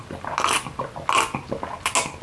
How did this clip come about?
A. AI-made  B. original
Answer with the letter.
B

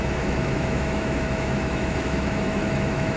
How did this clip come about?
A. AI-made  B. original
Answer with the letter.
A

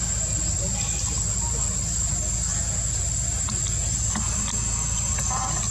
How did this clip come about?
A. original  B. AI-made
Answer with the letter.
A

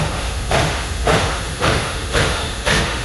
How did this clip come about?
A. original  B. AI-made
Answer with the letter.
B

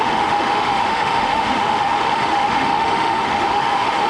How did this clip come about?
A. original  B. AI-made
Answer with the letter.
B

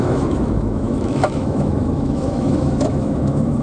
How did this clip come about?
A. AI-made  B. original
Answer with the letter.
A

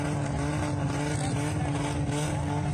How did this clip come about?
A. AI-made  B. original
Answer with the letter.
B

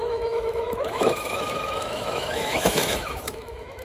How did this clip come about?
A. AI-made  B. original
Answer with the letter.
A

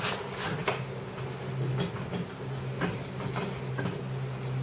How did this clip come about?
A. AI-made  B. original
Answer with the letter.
B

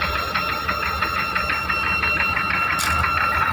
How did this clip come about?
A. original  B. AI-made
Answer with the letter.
A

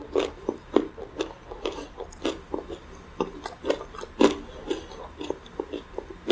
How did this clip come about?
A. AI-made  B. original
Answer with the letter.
B